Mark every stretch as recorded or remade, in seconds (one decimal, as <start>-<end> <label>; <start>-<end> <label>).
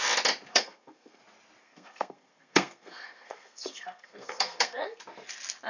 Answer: 0.0-0.5 recorded; 0.5-1.2 remade; 1.2-1.6 recorded; 1.6-5.0 remade; 5.0-5.7 recorded